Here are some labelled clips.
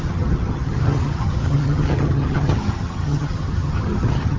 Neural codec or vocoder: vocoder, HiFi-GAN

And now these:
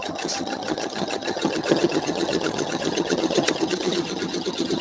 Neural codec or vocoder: vocoder, HiFi-GAN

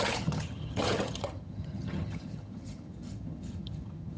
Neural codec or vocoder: vocoder, HiFi-GAN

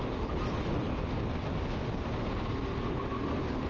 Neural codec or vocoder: none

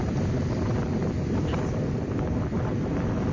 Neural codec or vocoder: none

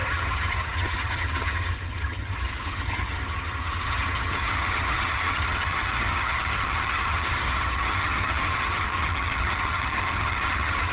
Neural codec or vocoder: vocoder, HiFi-GAN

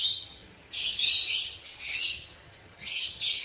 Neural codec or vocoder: vocoder, HiFi-GAN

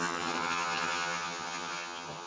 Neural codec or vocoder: vocoder, HiFi-GAN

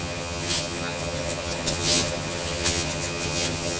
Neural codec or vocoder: vocoder, HiFi-GAN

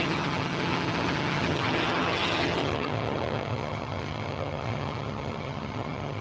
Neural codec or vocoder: vocoder, HiFi-GAN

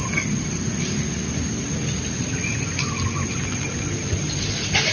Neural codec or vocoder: none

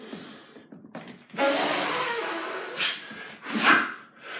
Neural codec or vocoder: none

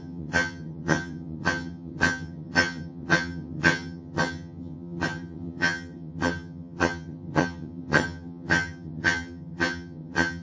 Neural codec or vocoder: vocoder, HiFi-GAN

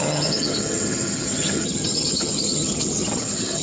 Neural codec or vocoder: vocoder, HiFi-GAN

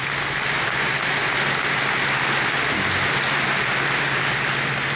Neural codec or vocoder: none